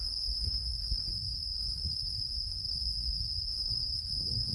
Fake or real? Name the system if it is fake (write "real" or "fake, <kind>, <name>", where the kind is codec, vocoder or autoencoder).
fake, codec, HILCodec